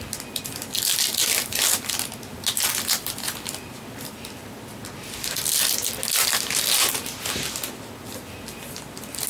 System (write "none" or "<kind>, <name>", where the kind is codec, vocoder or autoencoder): none